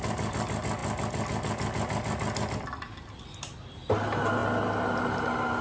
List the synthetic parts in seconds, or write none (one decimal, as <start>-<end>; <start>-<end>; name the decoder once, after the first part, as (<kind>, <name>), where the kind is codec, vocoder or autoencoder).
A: none